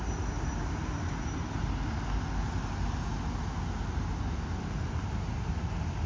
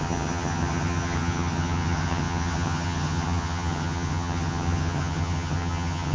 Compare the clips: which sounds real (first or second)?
first